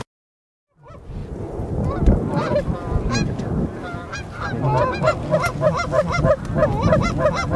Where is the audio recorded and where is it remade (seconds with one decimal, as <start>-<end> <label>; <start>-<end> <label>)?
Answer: 0.0-7.6 recorded